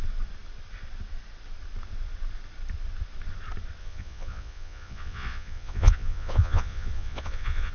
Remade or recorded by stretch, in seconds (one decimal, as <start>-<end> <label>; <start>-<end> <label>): 0.0-3.8 recorded; 3.8-7.7 remade